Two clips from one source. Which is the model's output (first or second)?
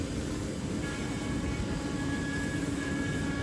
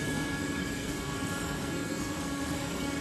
second